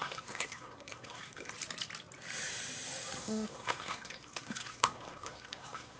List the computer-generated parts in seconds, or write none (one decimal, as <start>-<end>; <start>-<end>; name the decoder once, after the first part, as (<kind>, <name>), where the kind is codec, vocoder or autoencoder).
0.0-1.5 (codec, SNAC); 3.2-6.0